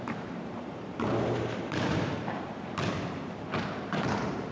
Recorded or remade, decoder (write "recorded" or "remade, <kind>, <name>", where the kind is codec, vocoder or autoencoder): remade, vocoder, BigVGAN v2